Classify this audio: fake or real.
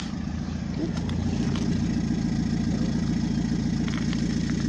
real